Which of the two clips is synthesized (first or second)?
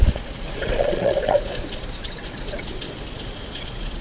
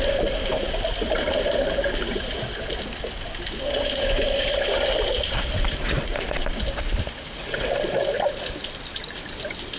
first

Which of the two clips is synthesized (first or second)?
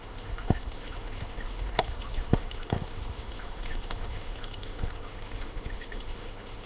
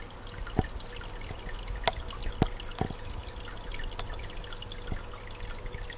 first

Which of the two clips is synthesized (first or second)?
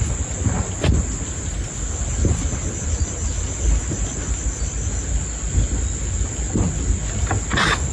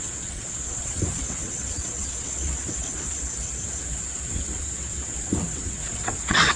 second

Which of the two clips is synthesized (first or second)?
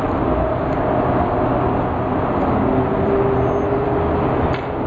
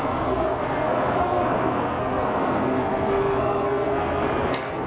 second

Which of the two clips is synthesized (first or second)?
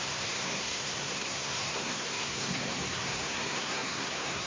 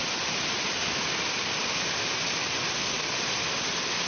first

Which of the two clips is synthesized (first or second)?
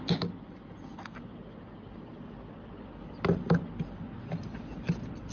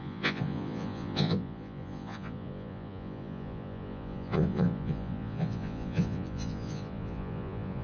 second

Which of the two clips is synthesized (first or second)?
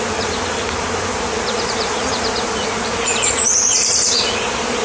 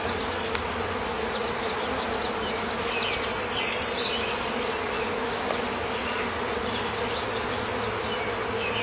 first